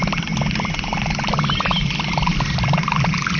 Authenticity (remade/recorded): recorded